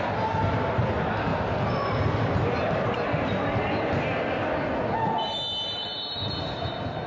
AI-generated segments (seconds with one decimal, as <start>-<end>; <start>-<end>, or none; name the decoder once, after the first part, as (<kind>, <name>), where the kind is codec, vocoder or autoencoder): none